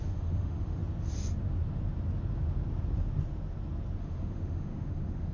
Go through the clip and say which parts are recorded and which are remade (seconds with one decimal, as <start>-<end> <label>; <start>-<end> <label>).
0.0-0.8 remade; 0.8-4.0 recorded; 4.0-5.3 remade